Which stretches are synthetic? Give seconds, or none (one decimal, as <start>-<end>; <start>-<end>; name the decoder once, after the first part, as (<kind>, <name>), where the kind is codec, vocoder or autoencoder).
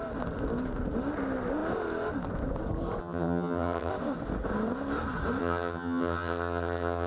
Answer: 3.0-3.9 (vocoder, HiFi-GAN); 5.4-7.1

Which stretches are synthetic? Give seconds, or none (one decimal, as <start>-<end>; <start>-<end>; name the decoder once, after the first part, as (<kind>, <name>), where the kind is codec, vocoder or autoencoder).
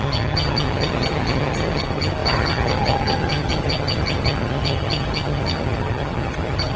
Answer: 0.0-6.8 (vocoder, HiFi-GAN)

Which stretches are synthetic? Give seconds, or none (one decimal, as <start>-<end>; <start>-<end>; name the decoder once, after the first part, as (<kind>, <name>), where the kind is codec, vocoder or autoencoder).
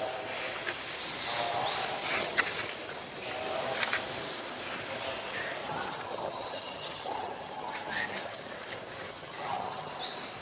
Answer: 2.0-2.6 (vocoder, HiFi-GAN); 5.6-8.5; 9.1-9.9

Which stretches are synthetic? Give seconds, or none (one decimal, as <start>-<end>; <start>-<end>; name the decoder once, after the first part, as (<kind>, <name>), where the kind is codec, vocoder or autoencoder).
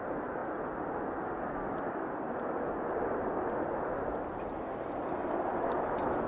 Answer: none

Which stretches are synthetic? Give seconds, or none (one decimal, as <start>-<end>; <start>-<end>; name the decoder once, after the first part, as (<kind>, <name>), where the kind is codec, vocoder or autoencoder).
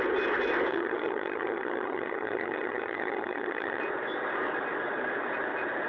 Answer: 0.7-3.8 (vocoder, HiFi-GAN)